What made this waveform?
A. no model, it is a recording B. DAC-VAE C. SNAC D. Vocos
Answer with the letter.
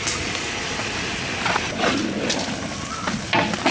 A